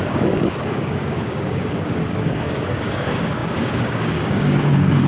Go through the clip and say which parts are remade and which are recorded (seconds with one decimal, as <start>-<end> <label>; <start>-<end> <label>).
0.0-5.1 remade